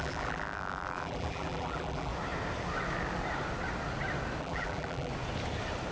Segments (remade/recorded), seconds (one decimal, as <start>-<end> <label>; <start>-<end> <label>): 0.0-2.1 remade; 2.1-4.4 recorded; 4.4-5.1 remade; 5.1-5.9 recorded